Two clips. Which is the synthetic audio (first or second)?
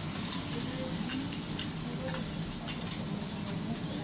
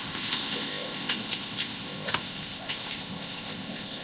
second